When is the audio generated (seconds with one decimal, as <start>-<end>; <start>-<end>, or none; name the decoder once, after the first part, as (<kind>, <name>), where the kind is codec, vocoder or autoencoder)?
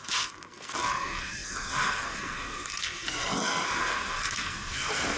0.0-5.2 (codec, SNAC)